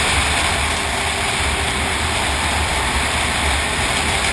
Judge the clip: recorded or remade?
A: recorded